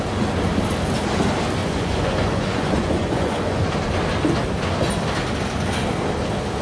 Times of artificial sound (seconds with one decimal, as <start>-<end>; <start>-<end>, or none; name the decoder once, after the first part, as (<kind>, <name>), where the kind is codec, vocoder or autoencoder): 1.6-3.7 (vocoder, Vocos)